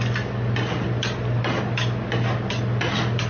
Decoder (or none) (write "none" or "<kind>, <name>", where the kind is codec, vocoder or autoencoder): none